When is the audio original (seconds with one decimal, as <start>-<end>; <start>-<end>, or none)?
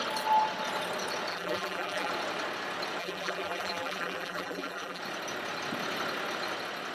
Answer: 0.0-1.3; 2.1-3.0; 5.0-6.9